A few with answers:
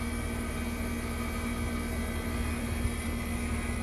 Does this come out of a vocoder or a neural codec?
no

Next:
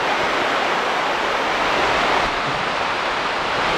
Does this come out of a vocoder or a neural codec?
no